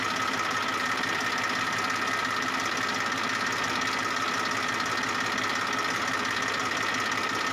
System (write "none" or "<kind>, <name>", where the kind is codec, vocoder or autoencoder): none